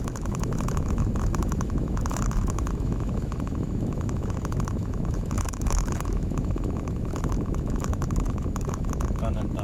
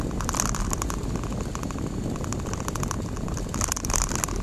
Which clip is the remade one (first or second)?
first